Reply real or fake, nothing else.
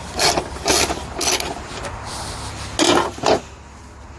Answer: real